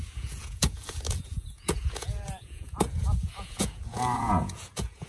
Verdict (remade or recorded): remade